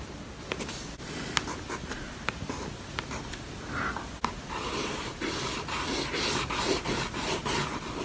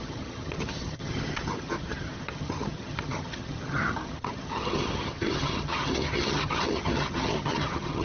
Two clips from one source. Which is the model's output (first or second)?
second